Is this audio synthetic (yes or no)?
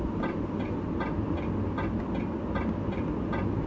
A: no